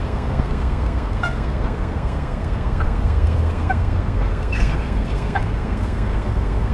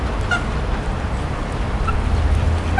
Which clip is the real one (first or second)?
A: second